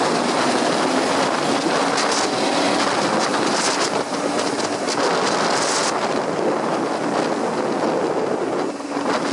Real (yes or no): yes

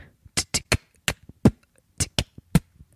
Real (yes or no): yes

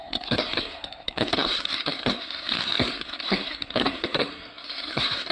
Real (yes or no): no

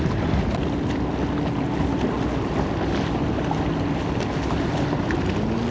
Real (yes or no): yes